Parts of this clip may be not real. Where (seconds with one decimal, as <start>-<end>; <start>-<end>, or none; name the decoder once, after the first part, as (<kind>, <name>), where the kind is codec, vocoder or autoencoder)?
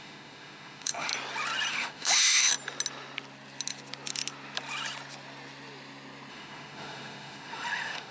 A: 0.0-1.1 (autoencoder, DAC-VAE); 1.7-2.5; 6.3-8.1